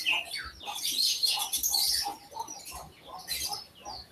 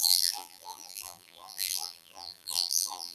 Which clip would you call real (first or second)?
first